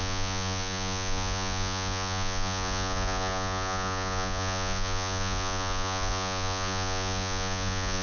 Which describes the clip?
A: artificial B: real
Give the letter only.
A